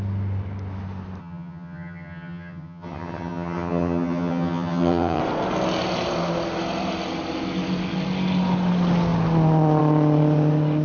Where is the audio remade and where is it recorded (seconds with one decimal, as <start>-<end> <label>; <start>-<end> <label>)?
0.0-1.2 recorded; 1.2-5.2 remade; 5.2-10.8 recorded